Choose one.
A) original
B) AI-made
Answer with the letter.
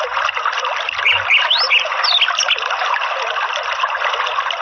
A